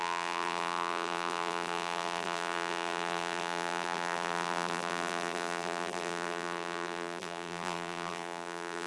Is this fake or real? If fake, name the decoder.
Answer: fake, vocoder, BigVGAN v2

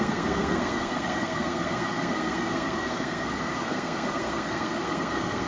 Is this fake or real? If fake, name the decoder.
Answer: fake, codec, SNAC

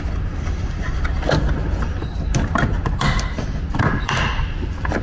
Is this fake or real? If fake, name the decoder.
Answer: fake, vocoder, BigVGAN v2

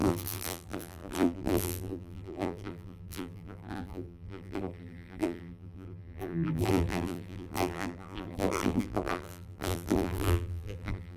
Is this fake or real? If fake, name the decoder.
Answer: fake, vocoder, BigVGAN v2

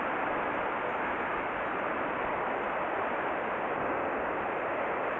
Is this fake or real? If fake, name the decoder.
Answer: real